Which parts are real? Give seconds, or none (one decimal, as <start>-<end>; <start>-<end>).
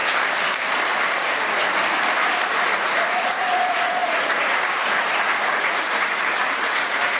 0.0-0.9; 1.8-2.5